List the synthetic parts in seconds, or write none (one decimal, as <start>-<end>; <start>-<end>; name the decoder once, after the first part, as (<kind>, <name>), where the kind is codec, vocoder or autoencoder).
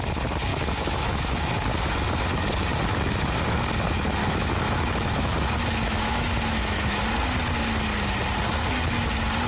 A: 0.5-1.4 (autoencoder, DAC-VAE); 4.2-7.0